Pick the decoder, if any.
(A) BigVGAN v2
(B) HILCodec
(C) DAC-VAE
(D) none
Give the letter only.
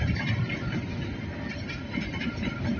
A